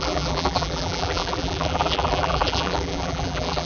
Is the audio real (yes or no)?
no